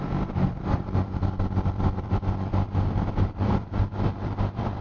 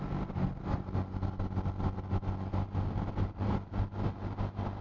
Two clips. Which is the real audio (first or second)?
second